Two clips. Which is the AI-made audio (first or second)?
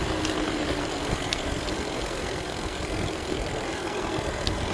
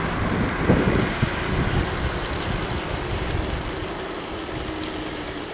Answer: first